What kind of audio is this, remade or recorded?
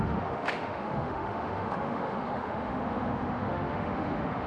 remade